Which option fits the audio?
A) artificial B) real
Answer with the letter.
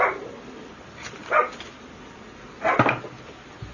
B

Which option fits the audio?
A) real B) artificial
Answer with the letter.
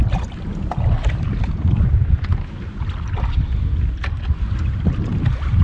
A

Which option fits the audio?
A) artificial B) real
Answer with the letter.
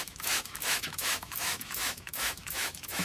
A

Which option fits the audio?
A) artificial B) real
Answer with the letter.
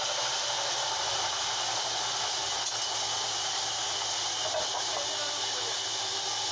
B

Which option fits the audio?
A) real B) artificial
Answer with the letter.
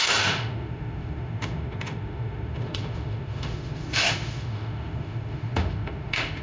B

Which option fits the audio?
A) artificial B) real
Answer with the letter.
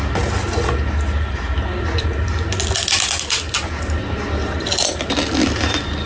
B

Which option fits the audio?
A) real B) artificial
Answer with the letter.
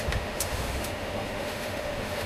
B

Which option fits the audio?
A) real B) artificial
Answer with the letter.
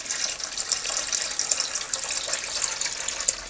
A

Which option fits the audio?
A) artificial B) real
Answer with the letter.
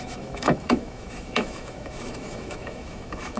A